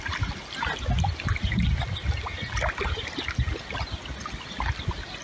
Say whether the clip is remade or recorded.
recorded